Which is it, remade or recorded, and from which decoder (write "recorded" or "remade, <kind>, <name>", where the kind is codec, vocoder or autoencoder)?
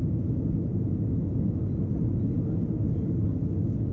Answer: recorded